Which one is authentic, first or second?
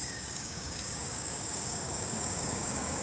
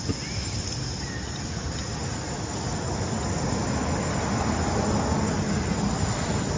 second